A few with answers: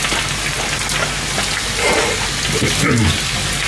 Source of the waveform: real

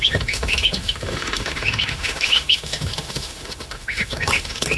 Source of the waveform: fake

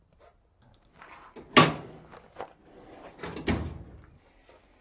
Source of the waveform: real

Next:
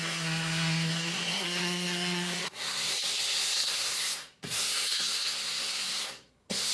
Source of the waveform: fake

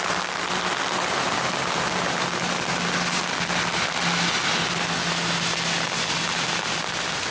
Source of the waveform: real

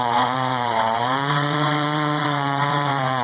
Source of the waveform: fake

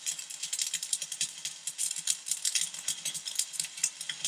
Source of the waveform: fake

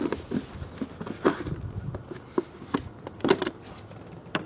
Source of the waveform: real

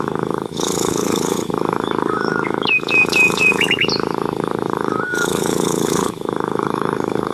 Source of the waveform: fake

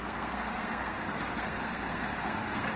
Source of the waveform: fake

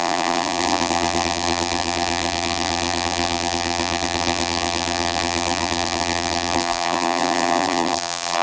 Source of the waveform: fake